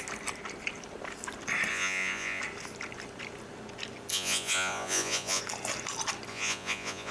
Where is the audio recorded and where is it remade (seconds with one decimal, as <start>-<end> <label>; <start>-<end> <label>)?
0.0-1.7 recorded; 1.7-2.4 remade; 2.4-4.1 recorded; 4.1-5.4 remade; 5.4-6.3 recorded; 6.3-7.1 remade